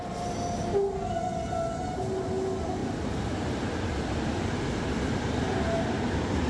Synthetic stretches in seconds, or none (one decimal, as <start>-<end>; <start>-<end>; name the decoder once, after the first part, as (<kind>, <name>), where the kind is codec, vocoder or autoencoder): 2.8-6.5 (vocoder, BigVGAN v2)